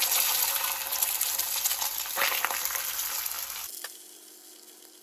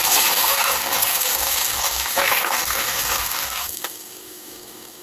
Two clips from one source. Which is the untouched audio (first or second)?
first